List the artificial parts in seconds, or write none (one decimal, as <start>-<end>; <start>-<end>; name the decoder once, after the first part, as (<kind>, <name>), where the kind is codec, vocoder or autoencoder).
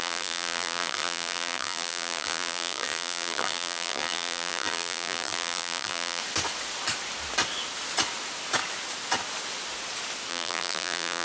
0.0-6.2 (vocoder, BigVGAN v2); 10.3-11.2